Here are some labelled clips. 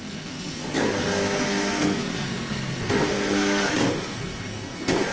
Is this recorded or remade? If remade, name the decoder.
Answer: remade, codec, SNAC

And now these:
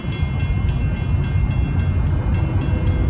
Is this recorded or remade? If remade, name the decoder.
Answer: recorded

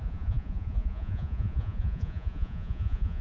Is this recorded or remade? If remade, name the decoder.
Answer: remade, vocoder, Vocos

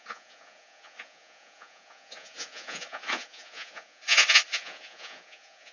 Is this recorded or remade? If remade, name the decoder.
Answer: remade, vocoder, Vocos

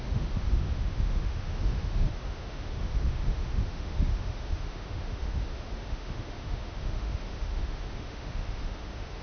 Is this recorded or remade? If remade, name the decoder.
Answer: remade, autoencoder, DAC-VAE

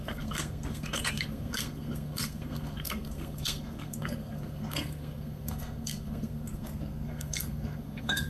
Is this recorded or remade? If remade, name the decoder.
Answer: remade, codec, SNAC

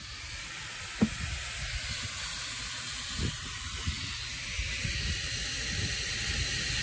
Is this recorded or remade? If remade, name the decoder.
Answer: recorded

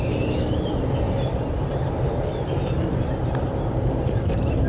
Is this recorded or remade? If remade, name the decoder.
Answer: recorded